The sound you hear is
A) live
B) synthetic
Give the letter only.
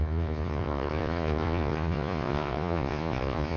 B